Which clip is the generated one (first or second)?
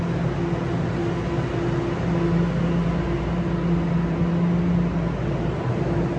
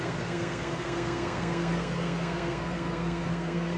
second